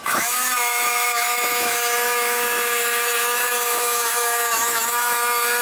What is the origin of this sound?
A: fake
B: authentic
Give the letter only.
A